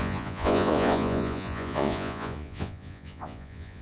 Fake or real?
fake